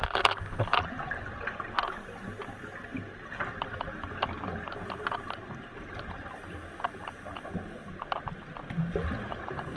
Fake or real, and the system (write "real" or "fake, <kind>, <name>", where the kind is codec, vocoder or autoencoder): real